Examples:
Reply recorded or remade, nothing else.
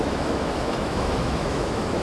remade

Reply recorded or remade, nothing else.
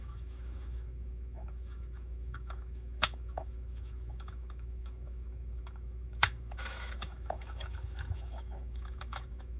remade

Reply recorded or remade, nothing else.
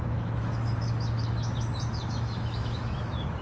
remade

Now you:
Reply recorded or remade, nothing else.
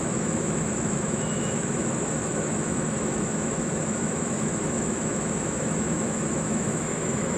remade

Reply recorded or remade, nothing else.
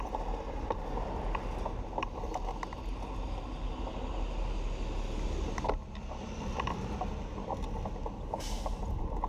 recorded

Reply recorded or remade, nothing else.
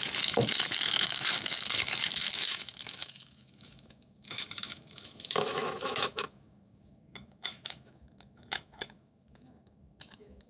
remade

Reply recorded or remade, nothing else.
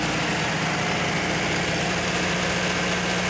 recorded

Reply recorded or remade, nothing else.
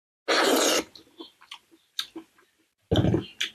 recorded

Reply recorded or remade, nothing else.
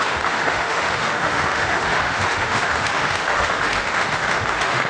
remade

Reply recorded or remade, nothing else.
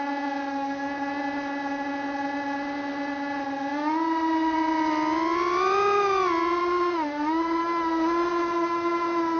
recorded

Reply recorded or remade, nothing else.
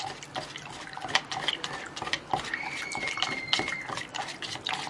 recorded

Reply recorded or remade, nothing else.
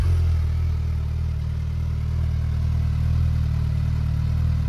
recorded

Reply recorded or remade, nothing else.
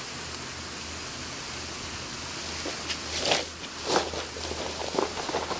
recorded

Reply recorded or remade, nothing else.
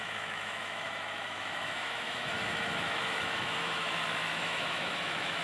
remade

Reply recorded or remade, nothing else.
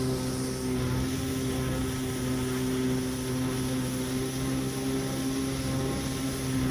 recorded